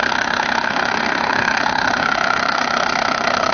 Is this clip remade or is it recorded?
remade